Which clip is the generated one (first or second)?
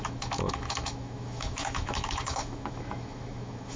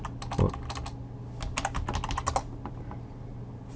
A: first